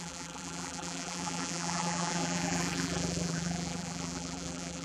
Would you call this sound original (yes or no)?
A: no